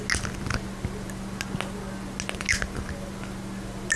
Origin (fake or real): real